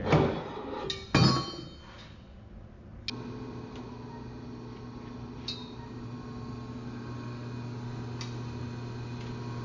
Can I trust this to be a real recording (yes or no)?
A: yes